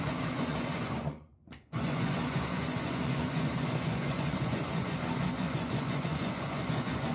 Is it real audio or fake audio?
fake